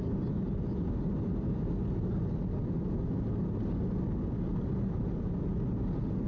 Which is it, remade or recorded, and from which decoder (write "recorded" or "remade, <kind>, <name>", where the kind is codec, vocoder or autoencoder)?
recorded